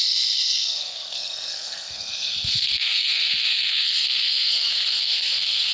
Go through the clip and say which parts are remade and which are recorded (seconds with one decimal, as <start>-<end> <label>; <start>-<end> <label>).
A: 0.0-5.7 remade